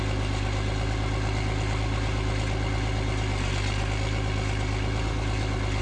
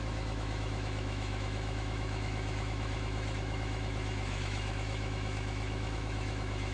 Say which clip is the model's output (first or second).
second